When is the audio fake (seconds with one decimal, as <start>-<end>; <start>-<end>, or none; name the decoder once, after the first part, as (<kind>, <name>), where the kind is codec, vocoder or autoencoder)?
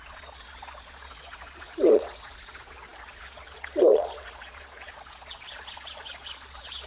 0.0-6.9 (vocoder, Vocos)